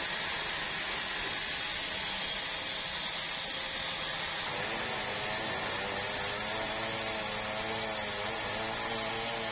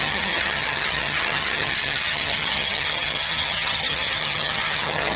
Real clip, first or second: first